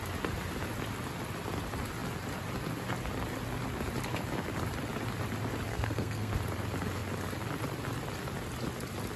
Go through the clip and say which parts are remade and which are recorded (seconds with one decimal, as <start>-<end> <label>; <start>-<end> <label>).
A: 0.0-5.7 recorded; 5.7-6.3 remade; 6.3-9.2 recorded